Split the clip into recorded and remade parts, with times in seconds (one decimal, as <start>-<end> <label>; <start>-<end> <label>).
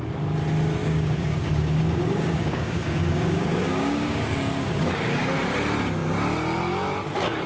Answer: 0.0-0.8 recorded; 0.8-5.3 remade; 5.3-7.5 recorded